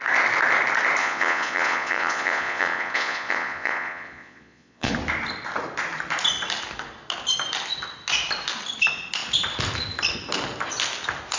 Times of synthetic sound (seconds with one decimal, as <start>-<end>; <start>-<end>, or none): 1.0-4.9